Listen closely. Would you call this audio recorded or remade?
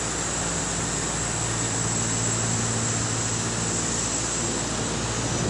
recorded